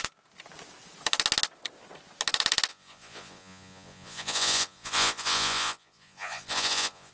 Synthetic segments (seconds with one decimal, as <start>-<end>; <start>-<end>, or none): 2.7-7.1